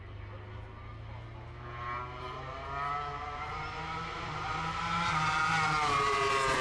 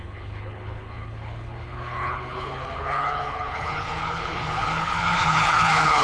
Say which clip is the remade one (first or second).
second